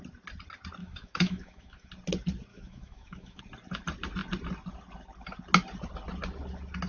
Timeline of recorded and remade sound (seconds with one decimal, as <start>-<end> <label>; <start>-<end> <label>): 0.0-0.8 recorded; 0.8-1.9 remade; 1.9-2.5 recorded; 2.5-3.4 remade; 3.4-6.9 recorded